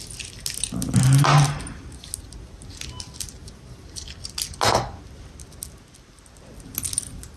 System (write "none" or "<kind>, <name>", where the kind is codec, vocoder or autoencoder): none